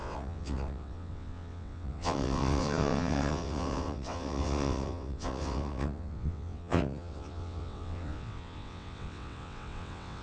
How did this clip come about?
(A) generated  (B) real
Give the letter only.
A